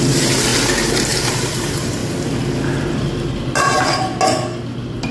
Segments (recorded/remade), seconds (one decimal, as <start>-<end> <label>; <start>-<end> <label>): 0.0-0.5 remade; 0.5-1.1 recorded; 1.1-2.0 remade; 2.0-2.9 recorded; 2.9-4.1 remade; 4.1-5.1 recorded